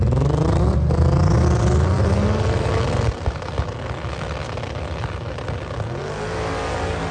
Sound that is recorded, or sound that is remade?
recorded